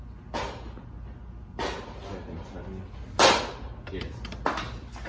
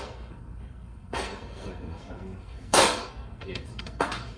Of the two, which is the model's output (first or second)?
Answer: second